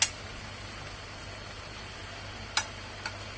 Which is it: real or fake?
real